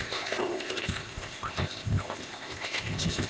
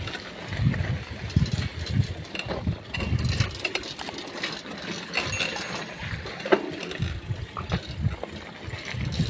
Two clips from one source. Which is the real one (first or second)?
second